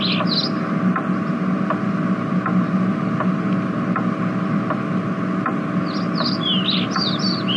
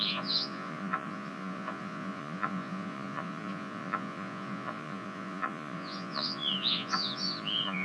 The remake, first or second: second